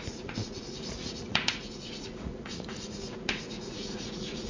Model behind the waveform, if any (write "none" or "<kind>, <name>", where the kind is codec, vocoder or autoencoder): vocoder, Vocos